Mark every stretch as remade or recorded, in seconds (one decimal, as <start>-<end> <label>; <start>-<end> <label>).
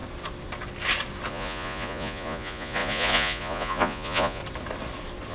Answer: 0.0-1.3 recorded; 1.3-4.4 remade; 4.4-5.3 recorded